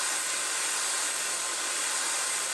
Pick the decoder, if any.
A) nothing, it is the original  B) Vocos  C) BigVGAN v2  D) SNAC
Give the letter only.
A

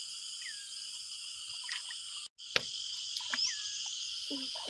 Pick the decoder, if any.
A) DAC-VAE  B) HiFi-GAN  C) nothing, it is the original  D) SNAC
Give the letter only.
C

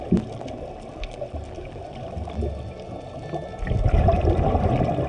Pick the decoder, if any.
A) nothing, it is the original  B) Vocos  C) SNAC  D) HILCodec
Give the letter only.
A